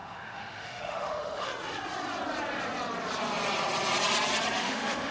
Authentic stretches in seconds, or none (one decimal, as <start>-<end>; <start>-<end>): 1.5-4.6